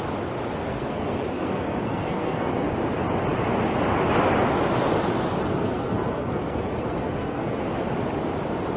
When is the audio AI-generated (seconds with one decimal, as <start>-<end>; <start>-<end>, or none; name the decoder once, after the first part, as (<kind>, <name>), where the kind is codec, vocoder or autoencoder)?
0.7-2.7 (codec, SNAC); 5.5-7.6